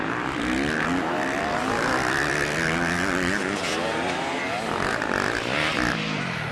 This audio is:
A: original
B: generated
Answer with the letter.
A